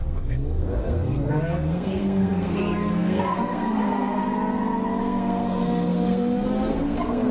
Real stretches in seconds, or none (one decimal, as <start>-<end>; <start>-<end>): 4.2-5.0